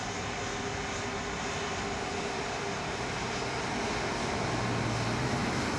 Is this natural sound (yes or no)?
yes